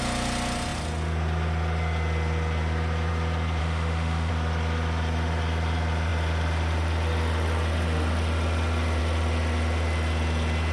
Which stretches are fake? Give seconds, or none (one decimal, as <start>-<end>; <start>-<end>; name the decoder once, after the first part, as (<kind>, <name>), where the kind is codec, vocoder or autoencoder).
3.6-4.3 (autoencoder, DAC-VAE)